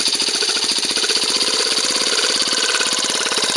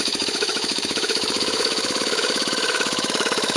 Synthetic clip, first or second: second